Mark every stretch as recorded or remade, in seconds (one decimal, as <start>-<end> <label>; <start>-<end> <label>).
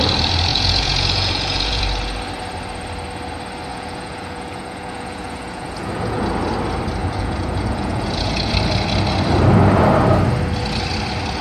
0.0-0.5 recorded; 0.5-1.8 remade; 1.8-3.7 recorded; 3.7-6.2 remade; 6.2-7.0 recorded; 7.0-8.5 remade; 8.5-11.4 recorded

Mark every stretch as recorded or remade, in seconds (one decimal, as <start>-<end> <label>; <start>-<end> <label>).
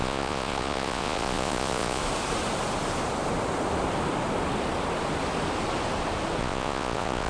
0.0-2.0 remade; 2.0-6.4 recorded; 6.4-7.3 remade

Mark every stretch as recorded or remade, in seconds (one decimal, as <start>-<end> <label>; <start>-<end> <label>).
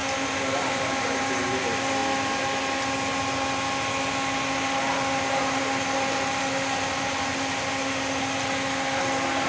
0.0-9.5 recorded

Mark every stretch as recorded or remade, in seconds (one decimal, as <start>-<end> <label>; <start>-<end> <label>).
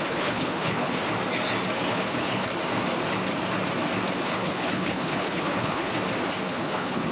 0.0-1.0 remade; 1.0-1.9 recorded; 1.9-2.5 remade; 2.5-4.2 recorded; 4.2-5.9 remade; 5.9-6.5 recorded; 6.5-7.1 remade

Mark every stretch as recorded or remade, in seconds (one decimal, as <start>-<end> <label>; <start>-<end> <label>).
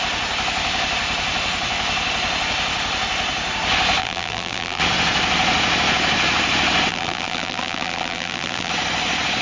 0.0-4.0 recorded; 4.0-4.8 remade; 4.8-6.9 recorded; 6.9-8.7 remade; 8.7-9.4 recorded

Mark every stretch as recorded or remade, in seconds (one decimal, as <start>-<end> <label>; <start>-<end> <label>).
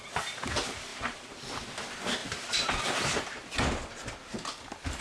0.0-0.9 recorded; 0.9-1.4 remade; 1.4-2.2 recorded; 2.2-2.8 remade; 2.8-5.0 recorded